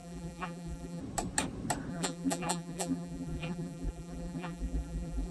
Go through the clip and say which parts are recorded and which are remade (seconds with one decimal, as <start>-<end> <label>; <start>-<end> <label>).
0.0-1.0 remade; 1.0-1.9 recorded; 1.9-5.3 remade